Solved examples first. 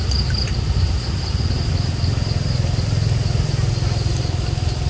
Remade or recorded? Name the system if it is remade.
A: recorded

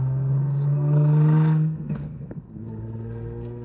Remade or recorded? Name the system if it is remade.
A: remade, codec, SNAC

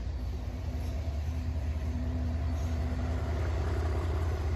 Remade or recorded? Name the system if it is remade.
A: remade, vocoder, BigVGAN v2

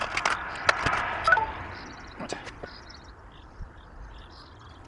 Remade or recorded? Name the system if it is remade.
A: recorded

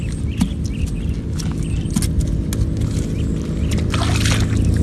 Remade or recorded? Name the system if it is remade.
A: recorded